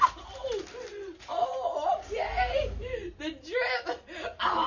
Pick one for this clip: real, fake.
real